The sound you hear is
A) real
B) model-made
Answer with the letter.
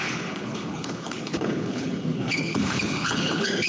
B